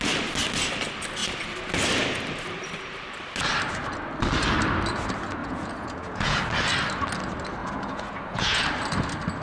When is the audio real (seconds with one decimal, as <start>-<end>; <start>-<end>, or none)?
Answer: 0.0-5.4; 6.4-7.6; 8.6-9.4